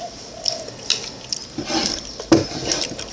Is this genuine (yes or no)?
yes